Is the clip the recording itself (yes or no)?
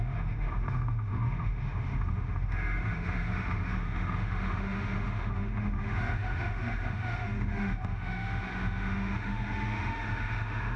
no